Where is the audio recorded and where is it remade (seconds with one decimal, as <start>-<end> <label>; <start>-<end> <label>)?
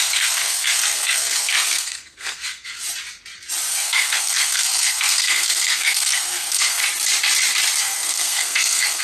0.0-2.8 remade; 2.8-3.7 recorded; 3.7-6.8 remade; 6.8-7.8 recorded; 7.8-9.0 remade